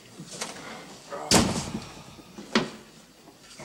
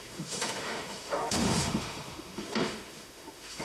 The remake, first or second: second